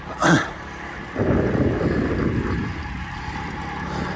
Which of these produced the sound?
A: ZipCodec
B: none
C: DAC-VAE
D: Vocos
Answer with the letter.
B